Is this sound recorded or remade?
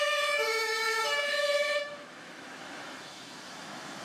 remade